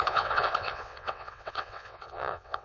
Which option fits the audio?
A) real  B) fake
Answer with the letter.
B